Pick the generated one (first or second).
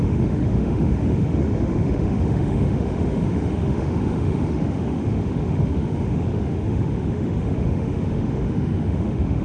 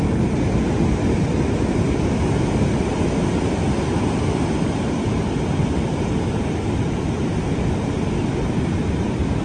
first